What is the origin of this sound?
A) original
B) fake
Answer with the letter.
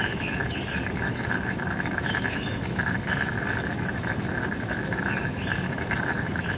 B